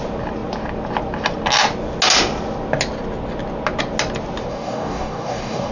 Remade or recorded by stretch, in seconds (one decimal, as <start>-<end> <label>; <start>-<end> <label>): 0.0-4.5 recorded; 4.5-5.7 remade